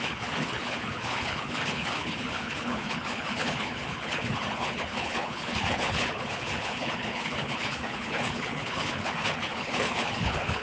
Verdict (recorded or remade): remade